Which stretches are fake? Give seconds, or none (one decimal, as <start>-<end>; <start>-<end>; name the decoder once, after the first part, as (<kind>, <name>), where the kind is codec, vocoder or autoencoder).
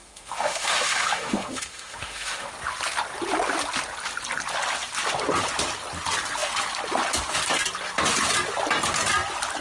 0.0-2.5 (autoencoder, DAC-VAE)